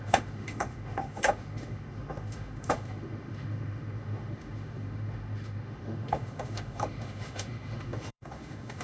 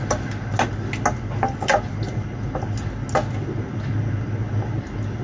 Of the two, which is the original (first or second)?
second